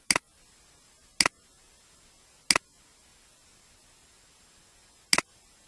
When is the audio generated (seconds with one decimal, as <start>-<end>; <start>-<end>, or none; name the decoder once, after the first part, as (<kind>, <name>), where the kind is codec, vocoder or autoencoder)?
none

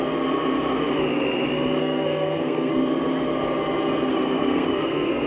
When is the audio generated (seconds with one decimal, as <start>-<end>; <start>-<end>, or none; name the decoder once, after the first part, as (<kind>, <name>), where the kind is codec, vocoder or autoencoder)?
1.8-2.7 (codec, SNAC); 4.1-5.3

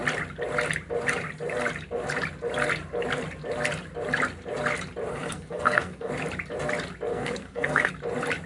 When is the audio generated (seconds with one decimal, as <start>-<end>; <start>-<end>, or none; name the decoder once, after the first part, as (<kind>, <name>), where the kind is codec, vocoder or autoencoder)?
5.1-6.1 (codec, SNAC); 7.1-7.9

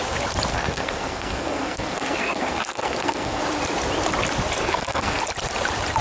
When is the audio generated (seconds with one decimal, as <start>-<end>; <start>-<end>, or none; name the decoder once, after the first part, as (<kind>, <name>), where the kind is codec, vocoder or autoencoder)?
0.5-3.4 (codec, SNAC); 4.6-5.2

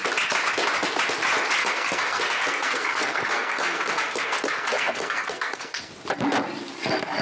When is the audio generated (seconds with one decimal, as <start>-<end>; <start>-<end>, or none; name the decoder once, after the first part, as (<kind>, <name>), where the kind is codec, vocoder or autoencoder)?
1.6-5.9 (codec, SNAC)

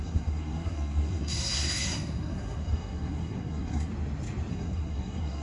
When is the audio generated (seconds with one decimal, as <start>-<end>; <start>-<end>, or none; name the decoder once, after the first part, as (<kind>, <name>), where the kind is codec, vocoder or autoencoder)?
0.0-3.9 (codec, SNAC); 4.5-5.4

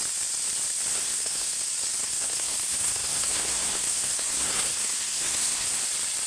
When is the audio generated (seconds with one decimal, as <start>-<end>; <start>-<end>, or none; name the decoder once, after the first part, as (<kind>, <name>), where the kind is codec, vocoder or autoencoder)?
0.9-1.6 (codec, SNAC); 2.0-5.8

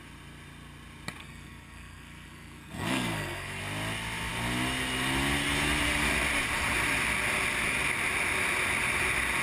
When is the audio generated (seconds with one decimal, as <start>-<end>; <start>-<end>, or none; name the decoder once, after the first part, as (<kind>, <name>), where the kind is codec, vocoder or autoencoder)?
1.2-3.6 (codec, SNAC)